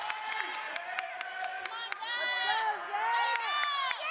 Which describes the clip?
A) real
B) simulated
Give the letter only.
A